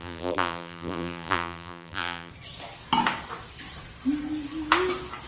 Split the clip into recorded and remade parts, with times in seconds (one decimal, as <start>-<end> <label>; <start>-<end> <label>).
0.0-2.3 remade; 2.3-5.3 recorded